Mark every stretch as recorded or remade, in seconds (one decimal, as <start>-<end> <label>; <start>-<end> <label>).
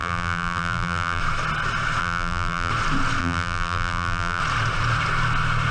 0.0-1.2 remade; 1.2-2.0 recorded; 2.0-2.7 remade; 2.7-3.2 recorded; 3.2-4.4 remade; 4.4-5.7 recorded